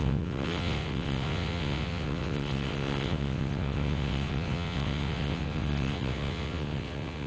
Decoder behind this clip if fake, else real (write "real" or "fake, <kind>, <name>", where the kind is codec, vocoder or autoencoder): fake, vocoder, WaveNeXt